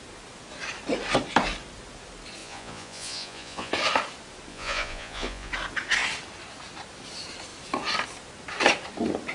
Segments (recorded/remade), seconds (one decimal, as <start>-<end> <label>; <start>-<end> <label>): 0.0-2.4 recorded; 2.4-3.7 remade; 3.7-4.5 recorded; 4.5-5.5 remade; 5.5-9.3 recorded